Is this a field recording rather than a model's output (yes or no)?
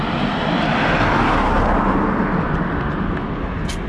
yes